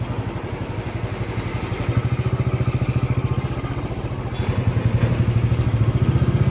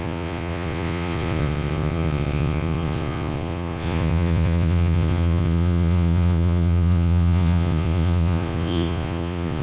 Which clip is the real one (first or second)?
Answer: first